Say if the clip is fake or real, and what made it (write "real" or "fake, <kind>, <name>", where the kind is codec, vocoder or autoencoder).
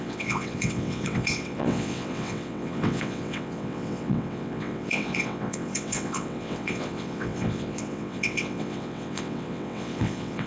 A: fake, vocoder, WaveNeXt